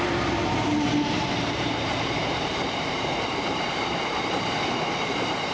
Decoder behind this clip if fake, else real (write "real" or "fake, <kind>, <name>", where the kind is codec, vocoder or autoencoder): fake, vocoder, BigVGAN v2